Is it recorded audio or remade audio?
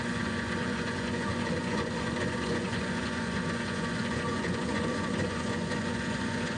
remade